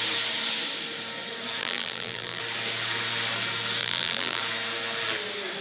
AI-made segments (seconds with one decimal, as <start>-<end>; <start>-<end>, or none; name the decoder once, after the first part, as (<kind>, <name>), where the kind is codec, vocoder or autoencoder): 1.6-2.4 (vocoder, BigVGAN v2); 3.8-4.4